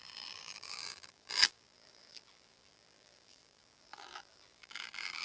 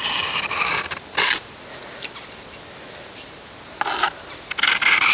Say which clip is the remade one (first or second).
first